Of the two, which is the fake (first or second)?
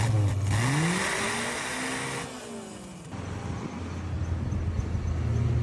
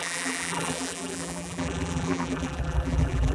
second